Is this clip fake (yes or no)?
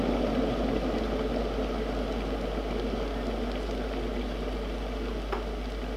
no